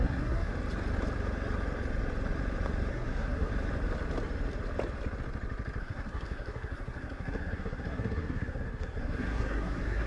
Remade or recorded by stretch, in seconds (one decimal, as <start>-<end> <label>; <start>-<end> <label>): 0.0-0.5 remade; 0.5-2.9 recorded; 2.9-3.5 remade; 3.5-5.8 recorded; 5.8-10.1 remade